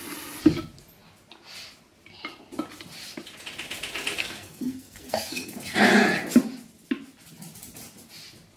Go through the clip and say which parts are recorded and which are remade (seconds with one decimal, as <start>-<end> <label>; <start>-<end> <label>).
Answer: 0.0-4.2 recorded; 4.2-5.9 remade; 5.9-8.6 recorded